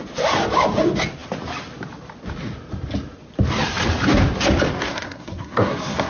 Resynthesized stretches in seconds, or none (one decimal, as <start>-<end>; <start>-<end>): 4.8-6.1